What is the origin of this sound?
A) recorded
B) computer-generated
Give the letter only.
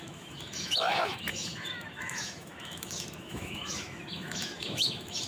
B